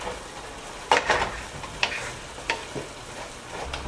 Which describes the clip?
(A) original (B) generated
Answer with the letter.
B